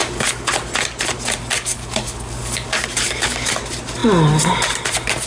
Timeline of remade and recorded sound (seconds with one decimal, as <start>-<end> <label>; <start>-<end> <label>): 0.0-0.5 remade; 0.5-1.7 recorded; 1.7-3.6 remade; 3.6-5.3 recorded

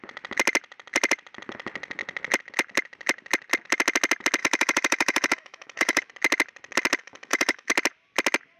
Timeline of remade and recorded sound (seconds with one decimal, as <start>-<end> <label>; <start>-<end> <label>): 0.0-4.4 recorded; 4.4-6.1 remade; 6.1-7.0 recorded; 7.0-7.7 remade; 7.7-8.6 recorded

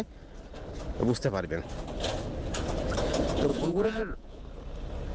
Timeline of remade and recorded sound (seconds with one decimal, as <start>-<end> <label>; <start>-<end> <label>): 0.0-3.5 recorded; 3.5-4.4 remade; 4.4-5.1 recorded

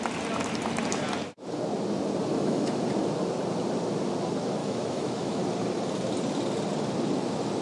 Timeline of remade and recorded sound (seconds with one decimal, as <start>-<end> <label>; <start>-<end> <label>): 0.0-2.3 recorded; 2.3-2.8 remade; 2.8-4.6 recorded; 4.6-5.4 remade; 5.4-7.6 recorded

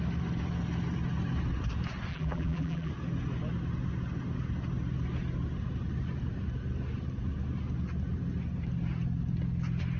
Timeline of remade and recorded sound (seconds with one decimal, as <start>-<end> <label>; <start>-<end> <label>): 0.0-2.1 recorded; 2.1-2.9 remade; 2.9-10.0 recorded